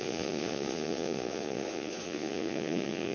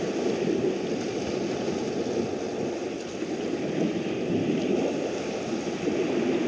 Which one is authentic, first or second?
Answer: second